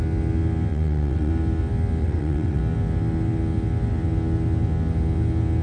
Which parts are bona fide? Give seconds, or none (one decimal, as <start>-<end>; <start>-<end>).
0.0-0.7; 1.3-2.0; 2.6-5.6